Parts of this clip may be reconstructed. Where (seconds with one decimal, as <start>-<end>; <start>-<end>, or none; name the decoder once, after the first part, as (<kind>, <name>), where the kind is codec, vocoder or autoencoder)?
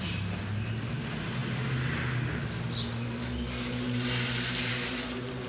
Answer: none